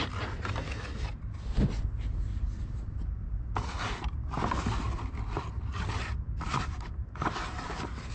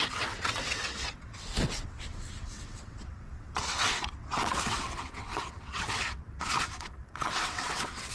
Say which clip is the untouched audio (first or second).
first